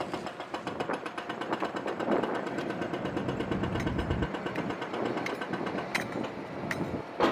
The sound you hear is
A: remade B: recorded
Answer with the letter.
B